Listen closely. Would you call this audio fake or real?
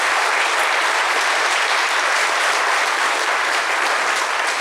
real